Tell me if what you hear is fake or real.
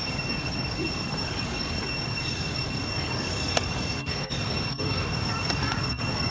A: fake